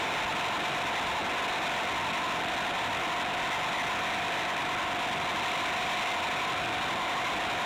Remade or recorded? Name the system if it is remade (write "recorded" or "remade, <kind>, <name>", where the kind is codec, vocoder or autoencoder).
recorded